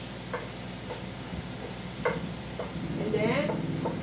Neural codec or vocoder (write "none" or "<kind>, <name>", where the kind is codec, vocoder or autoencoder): none